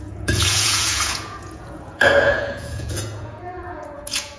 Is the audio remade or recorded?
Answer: remade